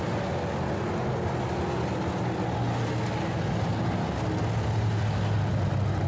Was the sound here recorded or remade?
recorded